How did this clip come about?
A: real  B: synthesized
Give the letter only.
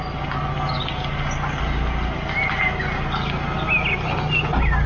A